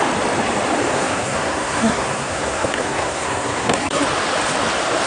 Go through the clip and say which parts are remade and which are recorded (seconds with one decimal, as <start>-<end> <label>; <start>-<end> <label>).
0.0-0.9 recorded; 0.9-4.0 remade; 4.0-5.1 recorded